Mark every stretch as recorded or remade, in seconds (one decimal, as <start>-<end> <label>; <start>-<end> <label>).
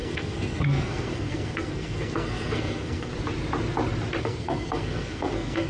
0.0-3.1 remade; 3.1-4.2 recorded; 4.2-5.7 remade